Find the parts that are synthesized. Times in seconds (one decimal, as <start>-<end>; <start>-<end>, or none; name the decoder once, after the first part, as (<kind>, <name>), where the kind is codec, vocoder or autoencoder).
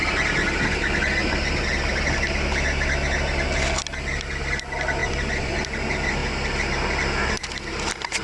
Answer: 5.0-5.6 (vocoder, BigVGAN v2)